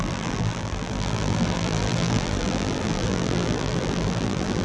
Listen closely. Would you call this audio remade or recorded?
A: remade